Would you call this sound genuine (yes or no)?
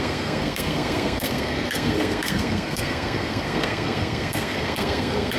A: no